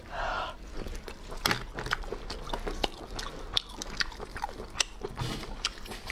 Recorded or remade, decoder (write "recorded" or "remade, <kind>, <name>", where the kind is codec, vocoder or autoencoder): recorded